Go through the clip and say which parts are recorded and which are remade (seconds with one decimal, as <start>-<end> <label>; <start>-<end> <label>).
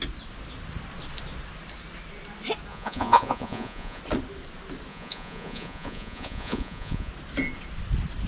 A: 0.0-2.7 recorded; 2.7-4.0 remade; 4.0-4.9 recorded; 4.9-7.1 remade; 7.1-8.3 recorded